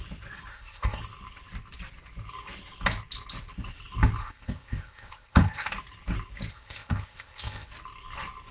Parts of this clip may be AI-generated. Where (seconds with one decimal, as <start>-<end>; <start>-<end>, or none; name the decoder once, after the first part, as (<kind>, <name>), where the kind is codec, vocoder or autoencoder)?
0.5-1.0 (codec, ZipCodec); 4.2-5.7; 6.5-7.7

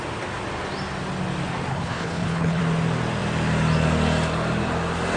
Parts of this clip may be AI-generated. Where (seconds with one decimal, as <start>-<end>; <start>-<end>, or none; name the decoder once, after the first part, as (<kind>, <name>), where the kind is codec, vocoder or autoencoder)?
1.7-2.6 (codec, HILCodec)

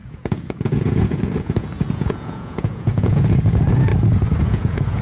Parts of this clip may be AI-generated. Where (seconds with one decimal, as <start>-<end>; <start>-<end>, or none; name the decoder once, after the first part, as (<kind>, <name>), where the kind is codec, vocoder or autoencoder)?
0.0-3.9 (vocoder, Vocos); 4.4-5.0

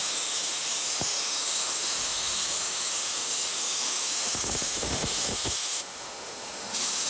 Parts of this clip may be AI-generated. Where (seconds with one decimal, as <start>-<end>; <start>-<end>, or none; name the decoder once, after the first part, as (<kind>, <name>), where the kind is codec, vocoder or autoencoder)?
0.0-7.1 (autoencoder, DAC-VAE)

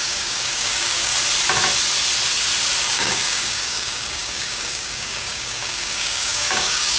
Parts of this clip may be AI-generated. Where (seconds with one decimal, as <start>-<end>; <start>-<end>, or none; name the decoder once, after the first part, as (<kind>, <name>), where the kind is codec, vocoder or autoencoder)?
0.0-1.1 (codec, DAC); 2.8-7.0

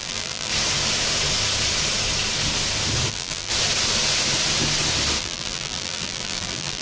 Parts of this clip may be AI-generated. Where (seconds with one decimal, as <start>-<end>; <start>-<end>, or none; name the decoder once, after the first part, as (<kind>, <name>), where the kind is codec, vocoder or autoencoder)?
0.0-0.5 (vocoder, BigVGAN v2); 3.1-3.5; 5.2-6.8

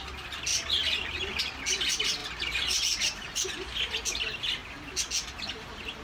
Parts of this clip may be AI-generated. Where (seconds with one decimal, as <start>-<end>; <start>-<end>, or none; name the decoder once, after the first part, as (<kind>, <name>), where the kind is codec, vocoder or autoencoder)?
0.5-1.4 (vocoder, BigVGAN v2); 2.2-3.8

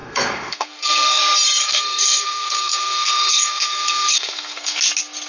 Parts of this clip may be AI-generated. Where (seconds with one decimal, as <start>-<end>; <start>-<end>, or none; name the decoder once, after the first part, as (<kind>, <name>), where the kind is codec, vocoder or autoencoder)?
0.0-1.2 (codec, SNAC); 1.6-4.8